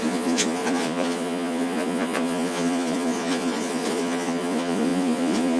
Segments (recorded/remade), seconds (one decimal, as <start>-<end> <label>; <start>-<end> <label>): 0.0-5.6 remade